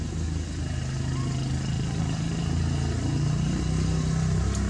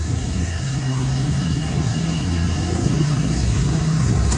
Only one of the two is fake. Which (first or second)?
second